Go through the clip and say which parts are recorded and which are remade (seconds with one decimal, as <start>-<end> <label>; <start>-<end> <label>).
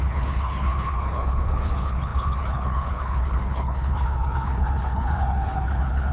0.0-6.1 remade